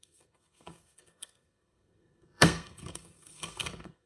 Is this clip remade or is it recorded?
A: remade